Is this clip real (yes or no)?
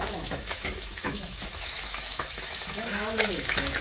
no